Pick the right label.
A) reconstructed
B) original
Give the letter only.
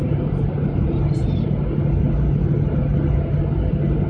B